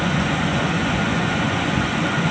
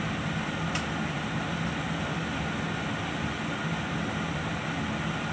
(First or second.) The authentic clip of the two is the second